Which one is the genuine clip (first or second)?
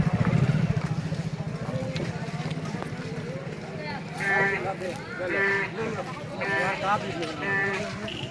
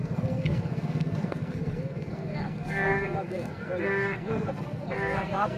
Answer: first